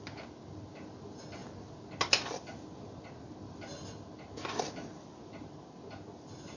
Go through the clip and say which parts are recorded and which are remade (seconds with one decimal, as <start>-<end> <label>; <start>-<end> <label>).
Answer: 0.0-6.6 recorded